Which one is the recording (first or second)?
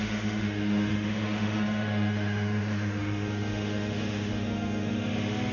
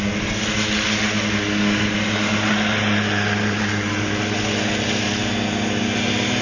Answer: second